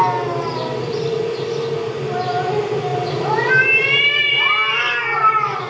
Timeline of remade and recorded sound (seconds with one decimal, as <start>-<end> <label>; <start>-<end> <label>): 0.0-5.7 recorded